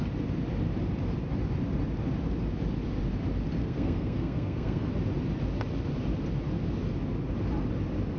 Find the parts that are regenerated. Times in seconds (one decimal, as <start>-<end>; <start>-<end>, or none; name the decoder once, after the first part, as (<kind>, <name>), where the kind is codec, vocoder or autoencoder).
3.6-4.9 (codec, SNAC)